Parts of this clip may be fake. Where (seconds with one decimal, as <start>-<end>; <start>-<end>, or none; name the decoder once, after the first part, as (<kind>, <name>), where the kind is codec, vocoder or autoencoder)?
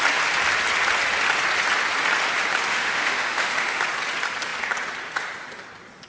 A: 2.7-3.8 (autoencoder, DAC-VAE)